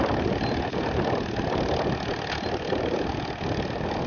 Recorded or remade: recorded